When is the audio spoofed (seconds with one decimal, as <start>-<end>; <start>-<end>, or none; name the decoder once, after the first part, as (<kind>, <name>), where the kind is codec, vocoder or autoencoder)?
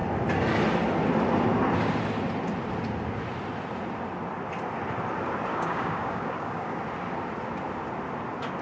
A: 5.5-6.8 (codec, DAC)